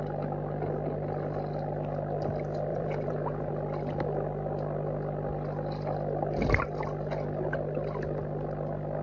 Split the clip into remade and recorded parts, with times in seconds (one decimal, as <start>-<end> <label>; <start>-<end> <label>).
0.0-2.7 recorded; 2.7-3.5 remade; 3.5-9.0 recorded